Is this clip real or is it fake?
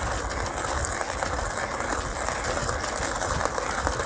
real